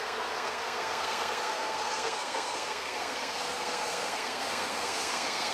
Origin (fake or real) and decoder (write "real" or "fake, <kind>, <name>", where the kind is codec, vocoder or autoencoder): fake, codec, SNAC